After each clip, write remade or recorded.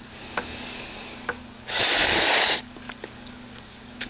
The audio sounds remade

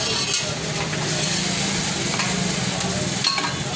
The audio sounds recorded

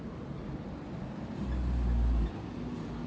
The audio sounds recorded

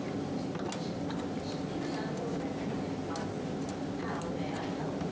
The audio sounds recorded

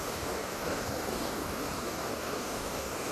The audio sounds remade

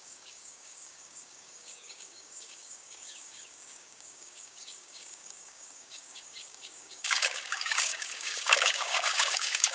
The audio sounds remade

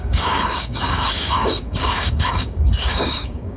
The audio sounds remade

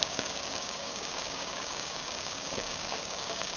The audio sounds remade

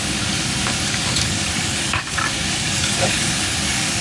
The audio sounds remade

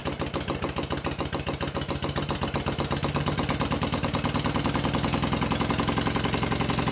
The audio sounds recorded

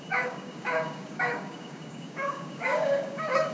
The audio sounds remade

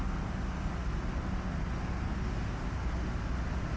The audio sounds recorded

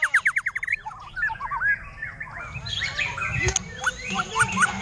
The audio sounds recorded